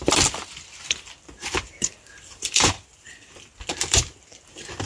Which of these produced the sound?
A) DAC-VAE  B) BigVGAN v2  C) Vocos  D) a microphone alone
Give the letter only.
D